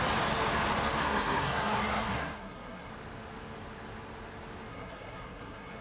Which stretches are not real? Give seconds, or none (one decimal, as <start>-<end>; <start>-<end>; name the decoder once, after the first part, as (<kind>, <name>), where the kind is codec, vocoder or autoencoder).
1.0-2.9 (codec, SNAC); 4.7-5.8